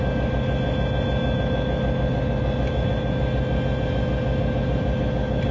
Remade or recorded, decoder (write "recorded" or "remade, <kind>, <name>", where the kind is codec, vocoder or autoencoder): recorded